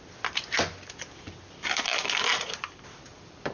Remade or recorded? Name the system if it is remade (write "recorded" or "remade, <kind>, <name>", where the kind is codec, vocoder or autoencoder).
remade, vocoder, BigVGAN v2